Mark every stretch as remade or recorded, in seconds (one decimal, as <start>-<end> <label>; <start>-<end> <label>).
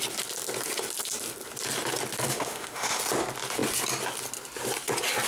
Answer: 0.0-2.3 recorded; 2.3-3.0 remade; 3.0-5.3 recorded